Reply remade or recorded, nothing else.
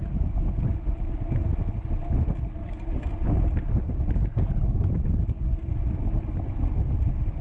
recorded